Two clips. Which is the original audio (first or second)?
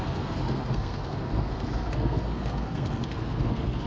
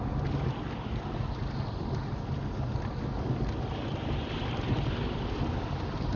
second